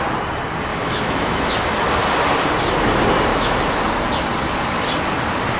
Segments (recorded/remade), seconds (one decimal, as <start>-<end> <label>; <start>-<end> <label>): 0.0-0.7 recorded; 0.7-1.5 remade; 1.5-3.3 recorded; 3.3-3.8 remade; 3.8-5.6 recorded